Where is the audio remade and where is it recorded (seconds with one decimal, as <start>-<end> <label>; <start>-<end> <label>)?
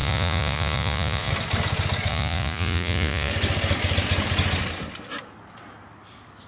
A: 0.0-1.3 remade; 1.3-2.1 recorded; 2.1-3.3 remade; 3.3-6.5 recorded